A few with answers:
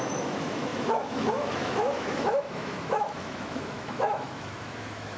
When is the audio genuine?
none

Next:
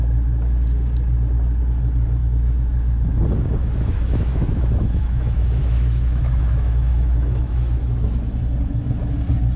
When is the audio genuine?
0.0-2.2; 3.2-3.6; 8.3-9.6

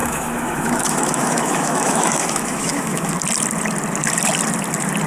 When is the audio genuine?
3.1-5.1

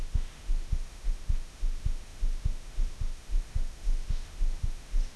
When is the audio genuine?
none

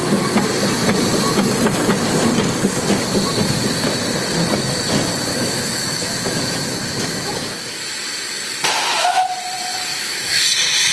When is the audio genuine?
0.0-5.3; 7.8-9.9; 10.4-10.9

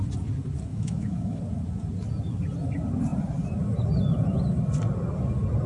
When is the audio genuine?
0.0-0.7; 1.4-5.7

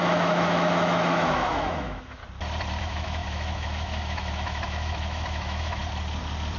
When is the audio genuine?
2.2-2.8; 5.8-6.6